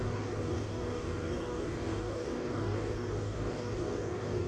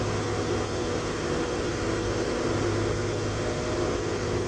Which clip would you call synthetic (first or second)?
first